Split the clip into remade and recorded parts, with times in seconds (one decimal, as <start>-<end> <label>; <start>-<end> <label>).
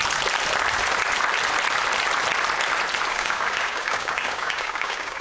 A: 0.0-3.1 recorded; 3.1-5.2 remade